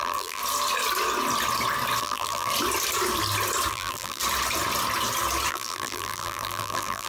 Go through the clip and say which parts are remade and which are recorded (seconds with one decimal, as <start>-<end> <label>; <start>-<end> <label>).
0.0-0.4 remade; 0.4-2.0 recorded; 2.0-2.5 remade; 2.5-3.7 recorded; 3.7-4.2 remade; 4.2-5.5 recorded; 5.5-7.1 remade